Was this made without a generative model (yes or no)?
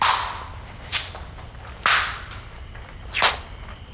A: yes